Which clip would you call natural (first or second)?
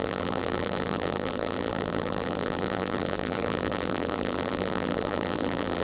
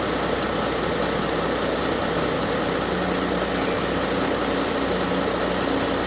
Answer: second